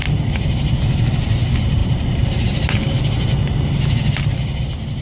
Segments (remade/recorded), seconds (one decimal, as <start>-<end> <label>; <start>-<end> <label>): 0.0-5.0 recorded